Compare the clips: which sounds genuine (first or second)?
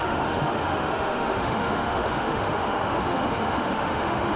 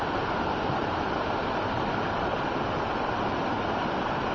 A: second